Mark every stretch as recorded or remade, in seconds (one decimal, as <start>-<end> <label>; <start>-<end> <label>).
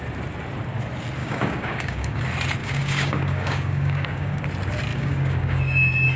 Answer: 0.0-1.2 recorded; 1.2-2.2 remade; 2.2-2.6 recorded; 2.6-4.4 remade; 4.4-4.9 recorded; 4.9-6.2 remade